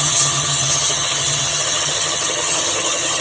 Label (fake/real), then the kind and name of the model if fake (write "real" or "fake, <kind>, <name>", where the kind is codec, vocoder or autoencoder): fake, vocoder, HiFi-GAN